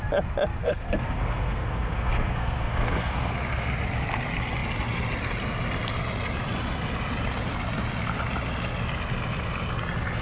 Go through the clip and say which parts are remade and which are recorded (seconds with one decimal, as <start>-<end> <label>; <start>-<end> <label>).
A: 0.0-0.6 recorded; 0.6-3.3 remade; 3.3-10.2 recorded